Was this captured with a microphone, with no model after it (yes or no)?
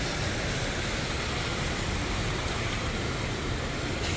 yes